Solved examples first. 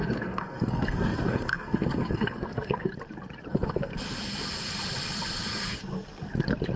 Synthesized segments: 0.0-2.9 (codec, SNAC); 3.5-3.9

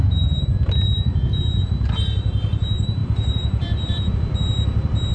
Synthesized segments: 3.0-4.1 (vocoder, BigVGAN v2)

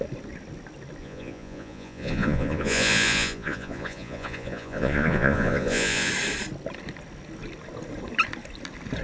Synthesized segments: 1.0-6.1 (vocoder, Vocos)